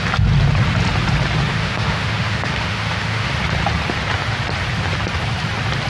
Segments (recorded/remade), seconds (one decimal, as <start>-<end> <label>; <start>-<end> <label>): 0.0-1.5 recorded; 1.5-3.4 remade; 3.4-5.9 recorded